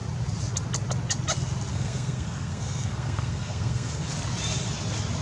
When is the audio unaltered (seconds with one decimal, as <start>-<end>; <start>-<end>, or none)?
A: 0.0-1.7; 4.1-5.2